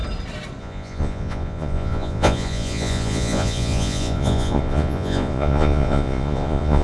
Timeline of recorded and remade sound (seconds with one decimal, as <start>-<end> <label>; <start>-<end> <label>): 0.0-0.6 recorded; 0.6-6.8 remade

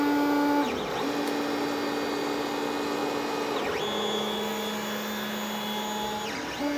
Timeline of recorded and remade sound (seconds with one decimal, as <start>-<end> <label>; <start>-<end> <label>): 0.0-6.8 recorded

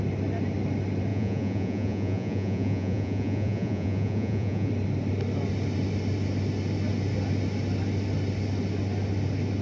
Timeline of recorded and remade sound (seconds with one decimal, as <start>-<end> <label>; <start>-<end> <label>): 0.0-1.1 recorded; 1.1-4.7 remade; 4.7-9.6 recorded

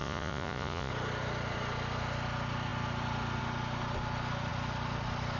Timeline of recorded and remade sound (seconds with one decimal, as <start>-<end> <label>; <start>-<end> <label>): 0.0-0.9 remade; 0.9-5.4 recorded

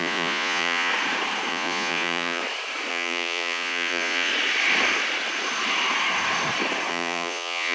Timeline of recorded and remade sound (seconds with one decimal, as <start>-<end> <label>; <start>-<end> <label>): 0.0-0.9 remade; 0.9-1.5 recorded; 1.5-2.4 remade; 2.4-2.9 recorded; 2.9-4.3 remade; 4.3-6.9 recorded; 6.9-7.7 remade